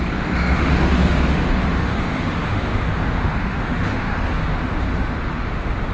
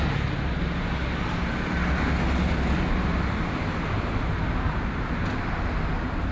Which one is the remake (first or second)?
first